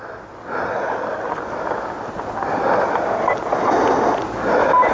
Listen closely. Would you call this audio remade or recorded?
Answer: recorded